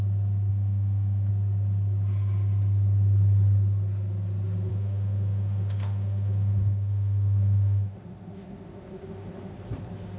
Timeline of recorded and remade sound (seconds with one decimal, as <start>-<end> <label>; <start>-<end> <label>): 0.0-0.5 recorded; 0.5-1.3 remade; 1.3-4.7 recorded; 4.7-9.5 remade; 9.5-10.2 recorded